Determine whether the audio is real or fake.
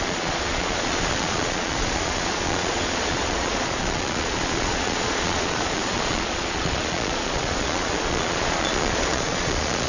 fake